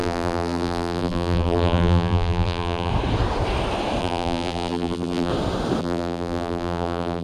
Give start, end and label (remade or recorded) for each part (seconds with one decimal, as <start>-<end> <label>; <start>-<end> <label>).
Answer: 0.0-2.9 remade; 2.9-4.0 recorded; 4.0-5.3 remade; 5.3-5.8 recorded; 5.8-7.2 remade